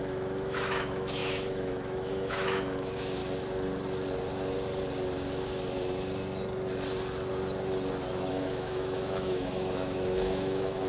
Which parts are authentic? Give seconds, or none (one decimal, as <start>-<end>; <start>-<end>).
3.2-8.3